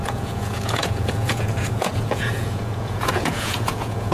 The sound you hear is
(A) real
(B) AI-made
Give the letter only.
B